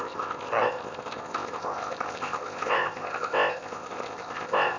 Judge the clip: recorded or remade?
remade